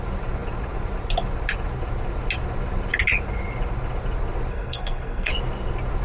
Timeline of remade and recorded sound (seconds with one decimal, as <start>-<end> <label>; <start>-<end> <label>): 0.0-4.5 recorded; 4.5-5.3 remade; 5.3-6.0 recorded